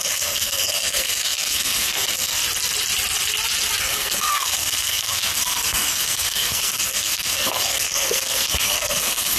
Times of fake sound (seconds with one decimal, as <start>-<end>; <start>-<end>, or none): 0.0-2.4; 3.8-9.4